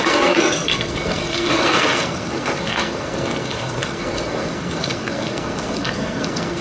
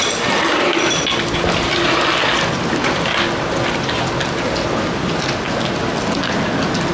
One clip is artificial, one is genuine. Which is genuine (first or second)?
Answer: second